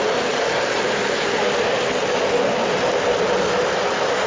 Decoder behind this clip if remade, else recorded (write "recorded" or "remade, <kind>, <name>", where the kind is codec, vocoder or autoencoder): recorded